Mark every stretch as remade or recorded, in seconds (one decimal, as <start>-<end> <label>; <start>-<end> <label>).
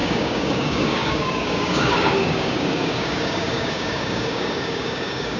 0.0-5.4 remade